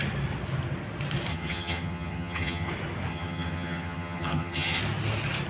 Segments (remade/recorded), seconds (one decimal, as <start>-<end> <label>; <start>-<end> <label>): 0.0-1.3 recorded; 1.3-2.7 remade; 2.7-3.1 recorded; 3.1-4.8 remade; 4.8-5.5 recorded